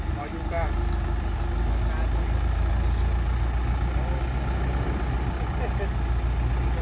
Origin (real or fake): real